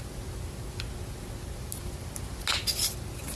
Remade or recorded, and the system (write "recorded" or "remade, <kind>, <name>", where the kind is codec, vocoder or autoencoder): recorded